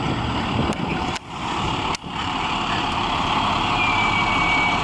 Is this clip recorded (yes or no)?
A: no